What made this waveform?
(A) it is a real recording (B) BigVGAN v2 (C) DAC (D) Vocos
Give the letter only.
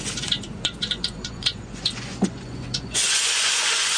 D